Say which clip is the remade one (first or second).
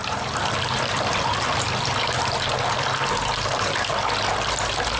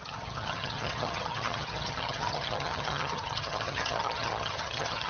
second